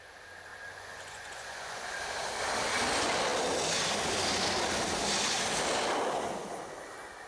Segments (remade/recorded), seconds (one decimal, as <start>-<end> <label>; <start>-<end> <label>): 0.0-0.5 recorded; 0.5-1.9 remade; 1.9-7.3 recorded